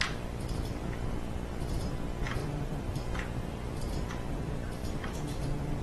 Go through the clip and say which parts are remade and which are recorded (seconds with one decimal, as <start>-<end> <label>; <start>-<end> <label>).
0.0-2.4 recorded; 2.4-3.9 remade; 3.9-4.8 recorded; 4.8-5.8 remade